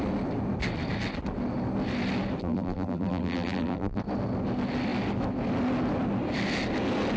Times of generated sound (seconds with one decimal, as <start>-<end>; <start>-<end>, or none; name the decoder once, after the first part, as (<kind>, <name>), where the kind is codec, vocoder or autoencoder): 2.4-4.0 (vocoder, BigVGAN v2)